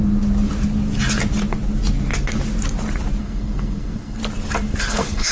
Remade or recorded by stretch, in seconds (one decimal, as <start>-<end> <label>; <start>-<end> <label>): 0.0-3.2 recorded; 3.2-4.2 remade; 4.2-4.8 recorded; 4.8-5.3 remade